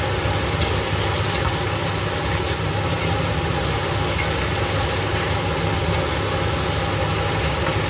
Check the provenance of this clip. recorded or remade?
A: recorded